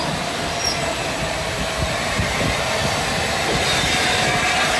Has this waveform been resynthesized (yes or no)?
no